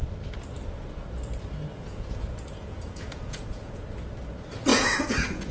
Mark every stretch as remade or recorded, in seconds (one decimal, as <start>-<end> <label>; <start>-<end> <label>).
0.0-1.7 recorded; 1.7-3.8 remade; 3.8-4.7 recorded; 4.7-5.5 remade